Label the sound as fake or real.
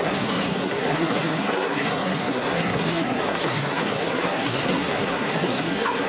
fake